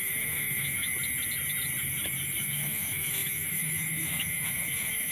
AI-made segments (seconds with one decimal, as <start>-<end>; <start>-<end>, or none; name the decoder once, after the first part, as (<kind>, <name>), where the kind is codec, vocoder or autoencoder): 0.0-0.9 (autoencoder, DAC-VAE); 2.4-5.1